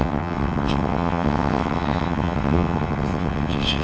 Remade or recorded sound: remade